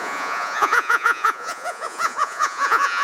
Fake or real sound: fake